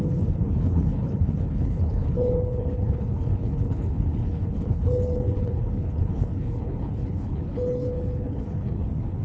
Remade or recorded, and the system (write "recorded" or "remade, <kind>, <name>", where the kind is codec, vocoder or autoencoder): remade, codec, HILCodec